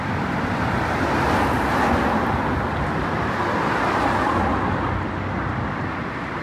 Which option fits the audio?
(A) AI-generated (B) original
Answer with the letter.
B